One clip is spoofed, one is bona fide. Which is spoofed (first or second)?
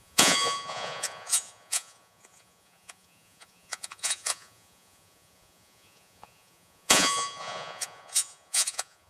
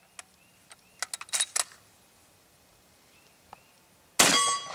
first